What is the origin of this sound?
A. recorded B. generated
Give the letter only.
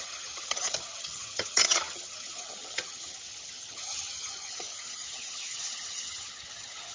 B